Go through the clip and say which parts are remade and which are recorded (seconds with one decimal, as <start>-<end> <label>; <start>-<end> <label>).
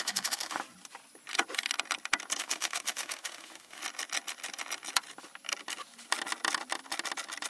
0.0-0.6 remade; 0.6-2.4 recorded; 2.4-3.8 remade; 3.8-7.5 recorded